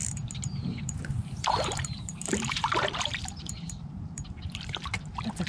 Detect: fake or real fake